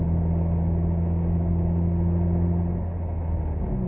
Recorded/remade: recorded